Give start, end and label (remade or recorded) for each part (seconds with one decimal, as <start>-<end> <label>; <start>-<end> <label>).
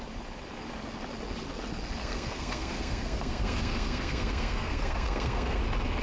0.0-2.0 recorded; 2.0-5.6 remade; 5.6-6.0 recorded